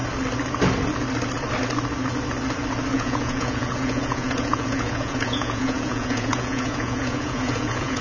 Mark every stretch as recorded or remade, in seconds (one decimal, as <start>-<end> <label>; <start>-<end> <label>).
0.0-2.9 recorded; 2.9-8.0 remade